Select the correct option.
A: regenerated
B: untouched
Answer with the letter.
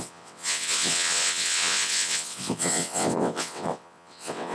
A